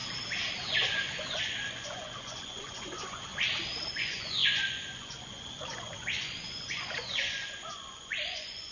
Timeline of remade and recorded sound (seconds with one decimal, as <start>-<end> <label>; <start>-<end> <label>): 0.0-0.5 recorded; 0.5-3.3 remade; 3.3-3.9 recorded; 3.9-8.7 remade